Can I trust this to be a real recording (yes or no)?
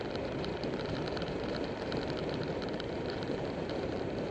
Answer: no